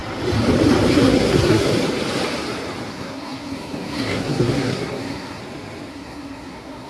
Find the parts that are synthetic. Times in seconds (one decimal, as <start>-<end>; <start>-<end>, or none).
0.9-1.7; 2.9-5.4; 5.9-6.9